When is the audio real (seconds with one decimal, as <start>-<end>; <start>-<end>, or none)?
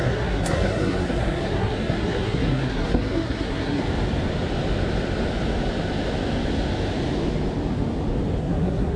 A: 3.8-8.4